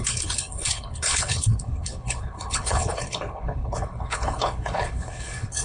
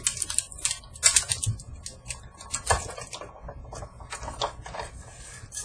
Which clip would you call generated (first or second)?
first